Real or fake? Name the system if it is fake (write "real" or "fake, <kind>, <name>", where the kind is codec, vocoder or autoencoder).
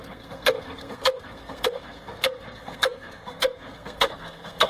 fake, codec, SNAC